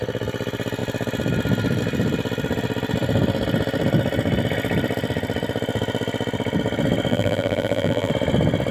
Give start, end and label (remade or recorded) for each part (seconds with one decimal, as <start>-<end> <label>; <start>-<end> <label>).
0.0-7.1 recorded; 7.1-8.1 remade; 8.1-8.7 recorded